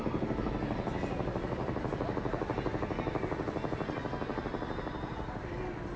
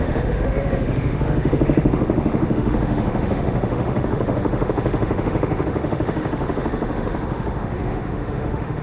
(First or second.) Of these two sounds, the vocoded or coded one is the second